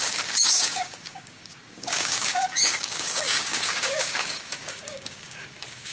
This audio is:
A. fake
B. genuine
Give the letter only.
A